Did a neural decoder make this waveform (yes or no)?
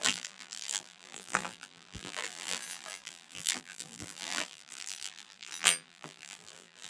yes